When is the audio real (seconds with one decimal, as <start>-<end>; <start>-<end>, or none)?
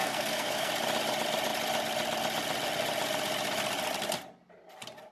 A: 0.7-5.1